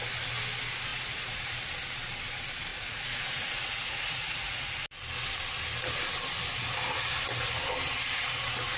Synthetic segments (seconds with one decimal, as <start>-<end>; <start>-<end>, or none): 0.9-1.4; 2.7-4.7